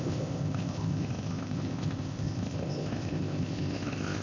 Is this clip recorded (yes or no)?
no